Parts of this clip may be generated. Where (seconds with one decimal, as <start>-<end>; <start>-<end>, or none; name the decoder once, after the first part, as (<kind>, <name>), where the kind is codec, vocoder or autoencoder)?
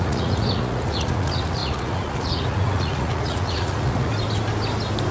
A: 0.0-4.1 (vocoder, Vocos)